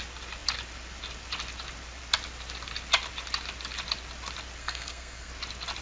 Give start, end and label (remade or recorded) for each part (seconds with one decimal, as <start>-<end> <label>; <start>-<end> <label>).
0.0-4.6 recorded; 4.6-5.3 remade; 5.3-5.8 recorded